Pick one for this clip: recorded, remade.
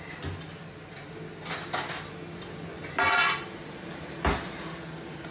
recorded